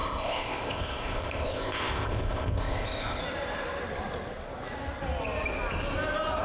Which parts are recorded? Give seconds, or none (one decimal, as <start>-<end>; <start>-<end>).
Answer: 3.2-6.4